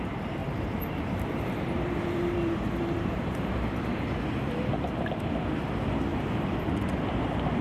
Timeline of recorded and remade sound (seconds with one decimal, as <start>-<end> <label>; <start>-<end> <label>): 0.0-0.4 recorded; 0.4-3.8 remade; 3.8-6.1 recorded; 6.1-6.7 remade; 6.7-7.6 recorded